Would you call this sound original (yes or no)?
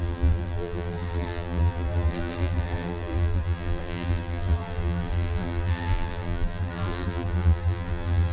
no